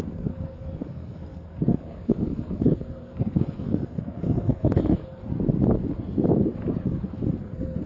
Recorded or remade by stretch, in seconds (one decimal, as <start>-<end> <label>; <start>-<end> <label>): 0.0-5.2 remade; 5.2-7.4 recorded; 7.4-7.9 remade